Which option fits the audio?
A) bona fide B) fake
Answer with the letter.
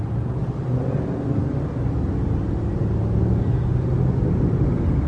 A